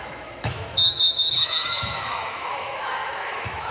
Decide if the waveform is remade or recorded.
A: remade